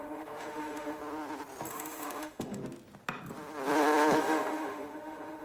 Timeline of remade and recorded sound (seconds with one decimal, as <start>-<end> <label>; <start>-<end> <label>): 0.0-1.0 remade; 1.0-1.7 recorded; 1.7-2.6 remade; 2.6-4.2 recorded; 4.2-5.4 remade